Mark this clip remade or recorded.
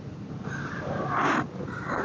recorded